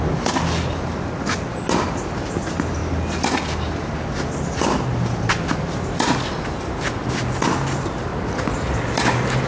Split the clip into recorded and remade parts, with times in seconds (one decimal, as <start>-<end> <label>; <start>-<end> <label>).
0.0-9.5 recorded